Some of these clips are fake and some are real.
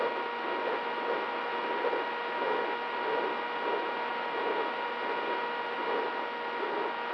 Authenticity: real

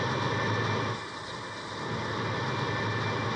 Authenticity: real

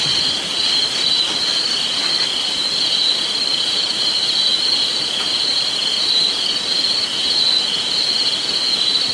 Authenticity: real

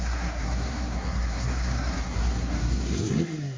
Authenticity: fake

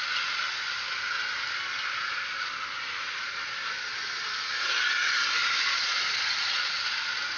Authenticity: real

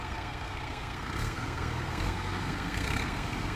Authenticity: fake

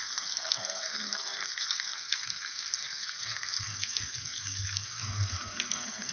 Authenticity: fake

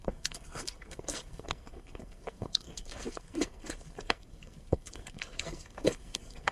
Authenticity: fake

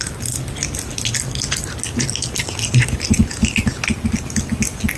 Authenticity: real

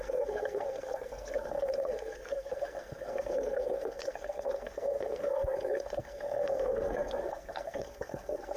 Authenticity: fake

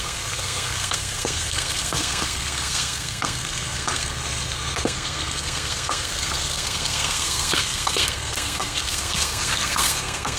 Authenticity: fake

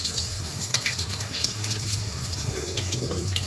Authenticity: fake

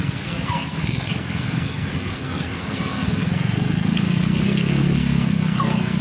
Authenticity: fake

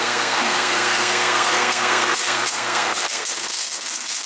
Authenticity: fake